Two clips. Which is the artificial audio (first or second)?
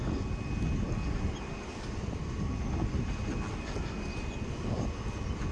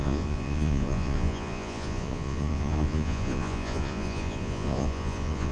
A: second